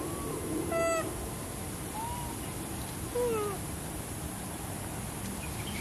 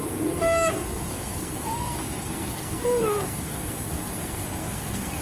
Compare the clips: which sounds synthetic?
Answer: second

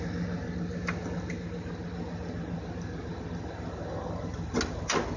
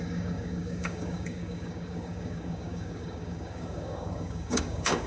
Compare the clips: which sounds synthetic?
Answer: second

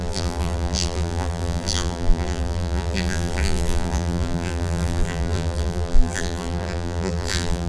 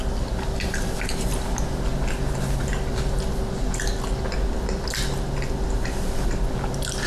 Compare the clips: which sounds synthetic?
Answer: first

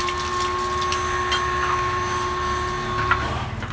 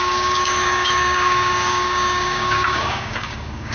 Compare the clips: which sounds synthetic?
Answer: second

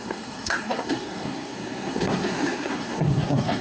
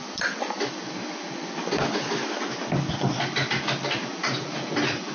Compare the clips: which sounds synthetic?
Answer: first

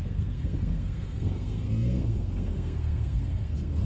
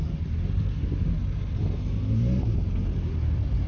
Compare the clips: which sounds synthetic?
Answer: first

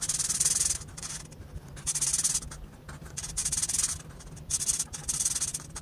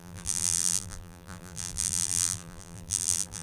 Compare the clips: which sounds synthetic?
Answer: second